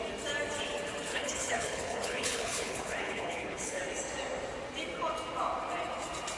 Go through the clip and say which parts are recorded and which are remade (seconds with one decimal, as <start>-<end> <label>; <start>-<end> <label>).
0.0-1.1 recorded; 1.1-3.8 remade; 3.8-6.4 recorded

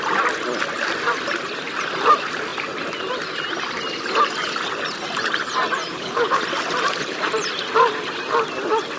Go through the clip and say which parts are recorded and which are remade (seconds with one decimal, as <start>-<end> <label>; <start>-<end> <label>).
0.0-5.9 recorded; 5.9-6.4 remade; 6.4-9.0 recorded

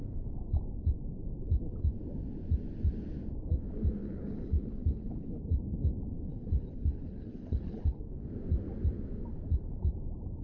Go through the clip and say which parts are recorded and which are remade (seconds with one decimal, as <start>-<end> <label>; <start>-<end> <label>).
0.0-4.0 recorded; 4.0-5.4 remade; 5.4-6.3 recorded; 6.3-8.0 remade; 8.0-10.4 recorded